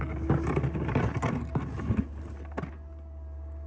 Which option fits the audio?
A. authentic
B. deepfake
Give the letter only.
A